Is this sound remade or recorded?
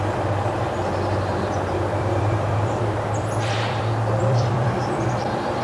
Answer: remade